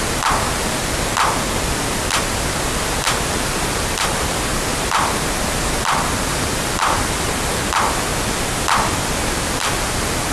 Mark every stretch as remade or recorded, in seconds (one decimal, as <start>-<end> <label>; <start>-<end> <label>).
0.0-0.8 remade; 0.8-2.8 recorded; 2.8-8.1 remade; 8.1-9.6 recorded; 9.6-10.3 remade